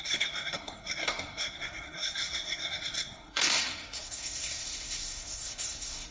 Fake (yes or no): yes